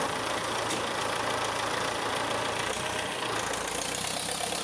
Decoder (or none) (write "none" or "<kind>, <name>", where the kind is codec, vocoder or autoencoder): none